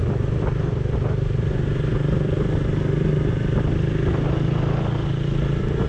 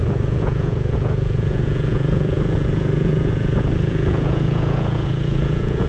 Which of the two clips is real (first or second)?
first